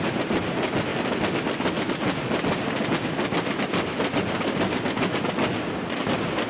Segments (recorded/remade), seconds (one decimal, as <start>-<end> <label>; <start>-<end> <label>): 0.0-6.5 recorded

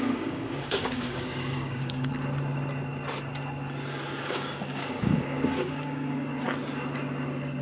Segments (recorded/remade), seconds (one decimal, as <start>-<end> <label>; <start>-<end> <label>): 0.0-2.1 remade; 2.1-4.2 recorded; 4.2-6.3 remade; 6.3-7.6 recorded

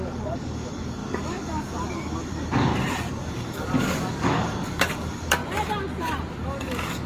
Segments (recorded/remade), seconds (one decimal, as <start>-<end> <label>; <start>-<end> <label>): 0.0-2.7 remade; 2.7-3.2 recorded; 3.2-5.4 remade; 5.4-6.4 recorded; 6.4-7.1 remade

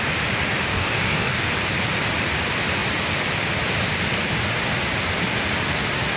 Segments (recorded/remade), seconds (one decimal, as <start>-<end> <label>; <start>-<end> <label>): 0.0-0.7 recorded; 0.7-1.5 remade; 1.5-6.2 recorded

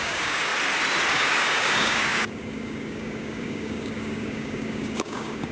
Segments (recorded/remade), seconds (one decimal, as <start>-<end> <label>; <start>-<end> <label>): 0.0-0.5 remade; 0.5-1.1 recorded; 1.1-5.5 remade

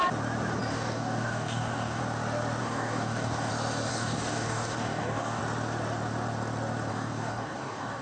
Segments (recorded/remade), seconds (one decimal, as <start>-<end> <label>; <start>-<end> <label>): 0.0-0.7 recorded; 0.7-2.0 remade; 2.0-2.6 recorded; 2.6-3.5 remade; 3.5-3.9 recorded; 3.9-5.4 remade; 5.4-6.9 recorded; 6.9-8.0 remade